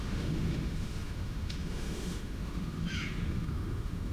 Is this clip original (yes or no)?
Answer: no